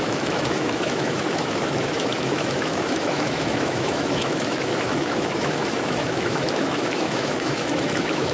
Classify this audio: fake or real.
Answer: fake